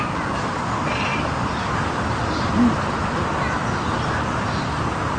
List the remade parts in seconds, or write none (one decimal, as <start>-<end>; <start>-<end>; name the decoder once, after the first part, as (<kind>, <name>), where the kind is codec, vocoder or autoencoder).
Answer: none